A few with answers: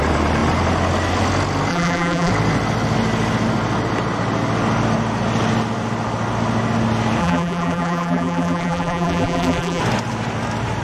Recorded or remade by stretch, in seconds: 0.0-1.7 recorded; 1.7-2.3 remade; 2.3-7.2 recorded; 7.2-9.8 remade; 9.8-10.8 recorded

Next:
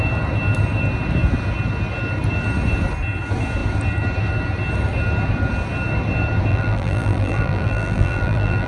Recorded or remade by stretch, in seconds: 0.0-6.5 recorded; 6.5-8.7 remade

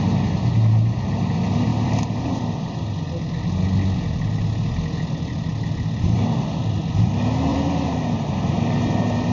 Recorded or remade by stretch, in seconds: 0.0-1.7 recorded; 1.7-3.2 remade; 3.2-7.5 recorded; 7.5-9.3 remade

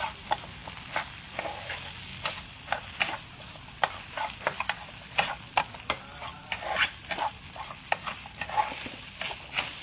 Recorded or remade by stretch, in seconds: 0.0-9.8 recorded

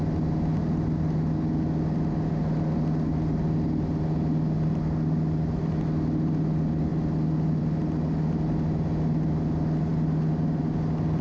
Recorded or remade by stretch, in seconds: 0.0-11.2 recorded